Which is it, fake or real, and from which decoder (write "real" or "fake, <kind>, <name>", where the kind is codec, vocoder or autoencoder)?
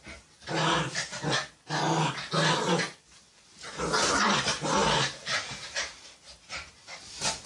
real